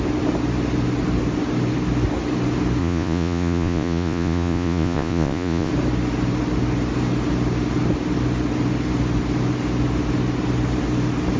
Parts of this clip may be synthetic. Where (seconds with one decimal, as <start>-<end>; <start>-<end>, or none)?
2.8-5.7